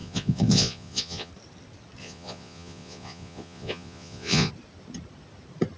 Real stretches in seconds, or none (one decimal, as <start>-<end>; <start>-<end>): 1.3-2.0; 4.5-5.8

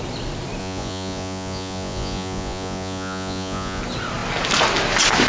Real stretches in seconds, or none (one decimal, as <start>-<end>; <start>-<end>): 0.0-0.6; 3.8-5.3

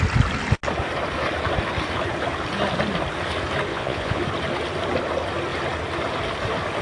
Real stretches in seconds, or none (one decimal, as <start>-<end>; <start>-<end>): 0.0-3.7; 4.2-6.8